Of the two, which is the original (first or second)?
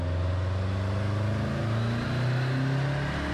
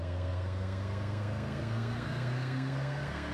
first